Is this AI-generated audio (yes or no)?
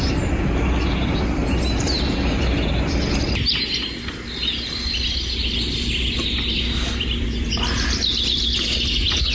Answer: no